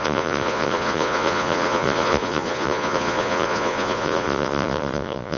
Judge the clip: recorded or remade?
remade